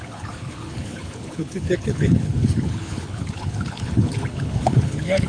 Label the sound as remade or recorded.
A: remade